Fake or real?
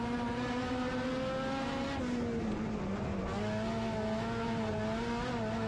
real